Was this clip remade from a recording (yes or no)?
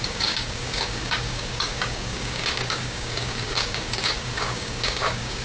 yes